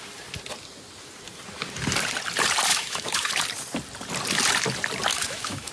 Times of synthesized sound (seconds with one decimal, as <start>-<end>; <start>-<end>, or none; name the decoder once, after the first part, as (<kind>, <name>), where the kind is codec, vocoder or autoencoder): 2.7-3.3 (autoencoder, DAC-VAE); 5.1-5.7